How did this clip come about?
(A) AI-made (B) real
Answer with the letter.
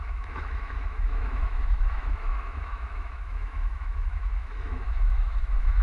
A